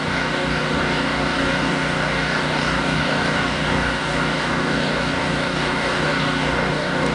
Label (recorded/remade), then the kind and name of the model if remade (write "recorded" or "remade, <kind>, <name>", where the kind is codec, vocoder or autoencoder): remade, codec, DAC